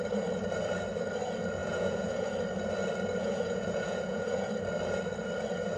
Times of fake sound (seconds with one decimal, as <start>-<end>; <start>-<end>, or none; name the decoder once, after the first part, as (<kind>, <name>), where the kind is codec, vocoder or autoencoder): 1.6-2.3 (vocoder, Vocos); 3.2-4.5